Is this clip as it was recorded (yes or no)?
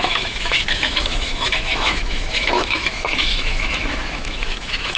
no